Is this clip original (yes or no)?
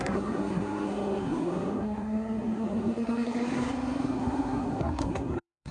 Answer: no